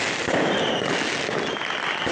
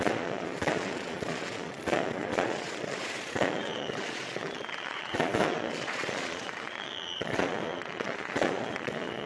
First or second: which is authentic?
first